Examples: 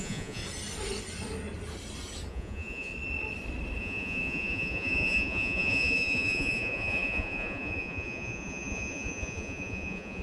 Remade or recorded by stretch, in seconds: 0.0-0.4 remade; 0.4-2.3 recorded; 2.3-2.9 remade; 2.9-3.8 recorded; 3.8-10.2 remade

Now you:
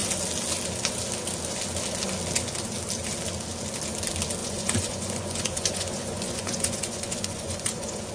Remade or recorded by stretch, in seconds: 0.0-4.4 recorded; 4.4-8.1 remade